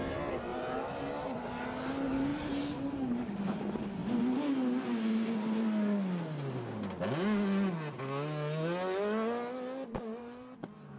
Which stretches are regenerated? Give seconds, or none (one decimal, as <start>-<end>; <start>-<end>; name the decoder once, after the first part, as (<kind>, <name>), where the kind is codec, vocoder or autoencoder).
0.5-1.0 (vocoder, BigVGAN v2); 2.3-3.6; 9.9-10.6